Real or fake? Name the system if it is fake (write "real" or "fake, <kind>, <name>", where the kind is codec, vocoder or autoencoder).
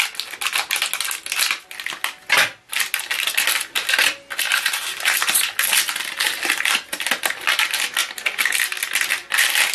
real